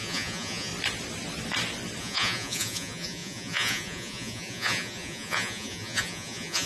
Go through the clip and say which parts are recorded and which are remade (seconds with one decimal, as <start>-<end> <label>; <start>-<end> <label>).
0.0-0.7 remade; 0.7-2.0 recorded; 2.0-6.7 remade